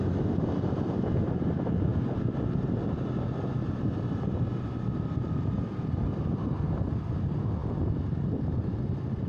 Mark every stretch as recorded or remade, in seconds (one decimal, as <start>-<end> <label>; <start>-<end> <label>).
0.0-9.3 recorded

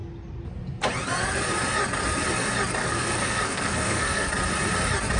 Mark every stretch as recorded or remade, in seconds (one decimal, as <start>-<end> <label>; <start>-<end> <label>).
0.0-2.8 recorded; 2.8-4.3 remade; 4.3-5.2 recorded